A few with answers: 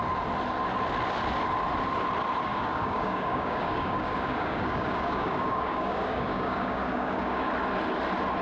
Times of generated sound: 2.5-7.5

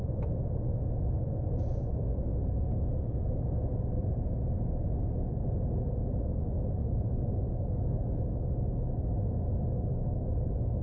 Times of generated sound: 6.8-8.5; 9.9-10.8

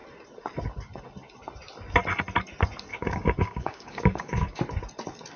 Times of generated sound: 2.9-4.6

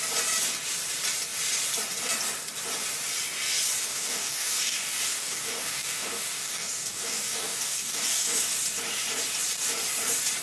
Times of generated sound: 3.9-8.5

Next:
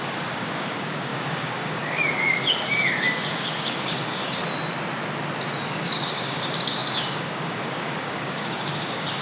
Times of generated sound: 0.0-4.4; 5.7-9.2

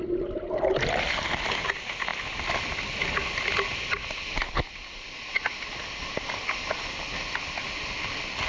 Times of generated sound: none

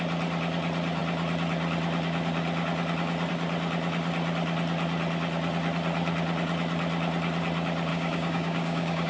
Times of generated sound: 7.9-9.1

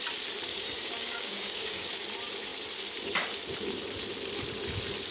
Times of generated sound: 0.5-1.9